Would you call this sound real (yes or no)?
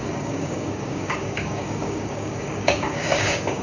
no